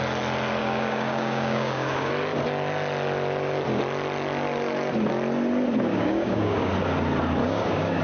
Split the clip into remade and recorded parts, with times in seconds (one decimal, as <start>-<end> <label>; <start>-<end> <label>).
0.0-0.6 recorded; 0.6-2.1 remade; 2.1-5.9 recorded; 5.9-6.7 remade; 6.7-7.4 recorded; 7.4-8.0 remade